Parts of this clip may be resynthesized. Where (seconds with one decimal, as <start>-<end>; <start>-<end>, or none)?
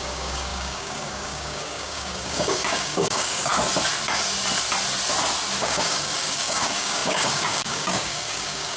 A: 0.0-3.5; 5.6-8.8